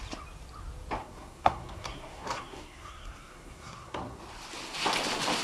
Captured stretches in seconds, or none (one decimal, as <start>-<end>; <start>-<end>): 0.0-1.0; 4.2-5.4